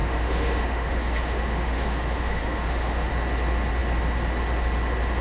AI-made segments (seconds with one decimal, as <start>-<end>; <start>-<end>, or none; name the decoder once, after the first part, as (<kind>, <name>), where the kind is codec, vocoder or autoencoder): 0.0-3.1 (autoencoder, DAC-VAE)